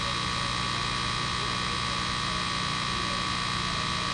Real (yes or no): yes